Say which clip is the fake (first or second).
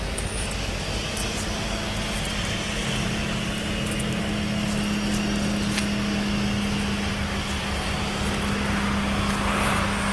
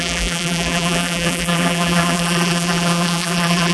second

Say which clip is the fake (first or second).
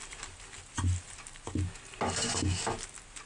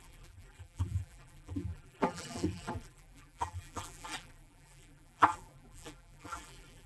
second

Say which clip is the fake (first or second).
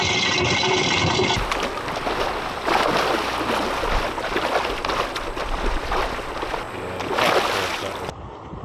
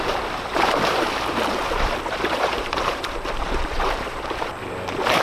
second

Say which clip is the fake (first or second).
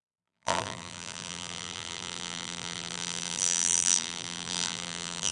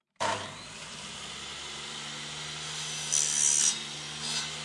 first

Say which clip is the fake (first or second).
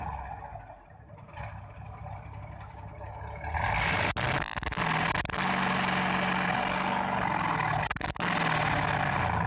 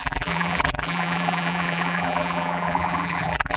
second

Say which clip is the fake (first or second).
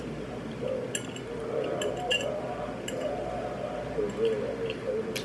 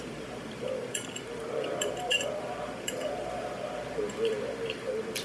second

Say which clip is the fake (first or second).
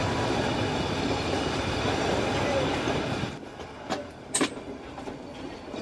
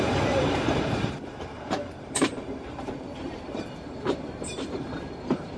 second